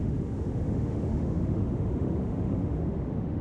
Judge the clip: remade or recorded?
remade